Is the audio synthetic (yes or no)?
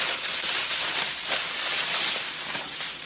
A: yes